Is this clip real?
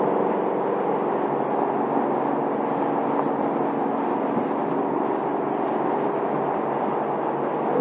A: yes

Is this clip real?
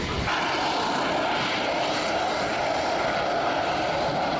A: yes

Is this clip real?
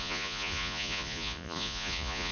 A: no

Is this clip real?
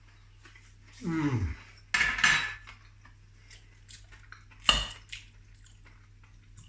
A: yes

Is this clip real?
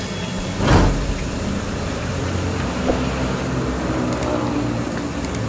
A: yes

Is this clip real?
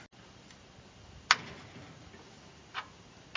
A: yes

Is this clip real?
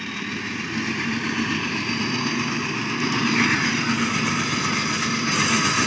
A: no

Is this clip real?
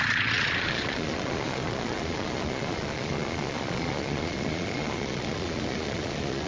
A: no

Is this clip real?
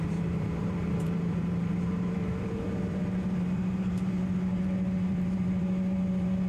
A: no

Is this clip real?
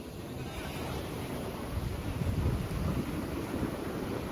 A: yes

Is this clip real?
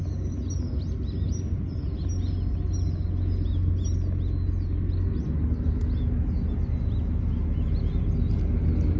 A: yes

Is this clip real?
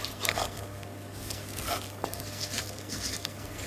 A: no